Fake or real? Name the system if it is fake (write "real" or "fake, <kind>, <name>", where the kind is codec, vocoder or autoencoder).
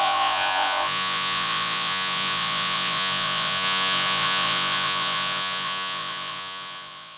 fake, vocoder, Vocos